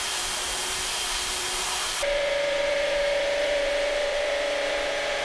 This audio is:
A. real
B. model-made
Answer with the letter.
B